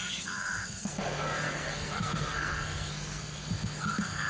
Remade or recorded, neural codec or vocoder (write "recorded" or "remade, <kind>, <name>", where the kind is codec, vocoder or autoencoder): remade, codec, SNAC